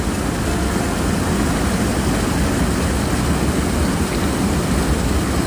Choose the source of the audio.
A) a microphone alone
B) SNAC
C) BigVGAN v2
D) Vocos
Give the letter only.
A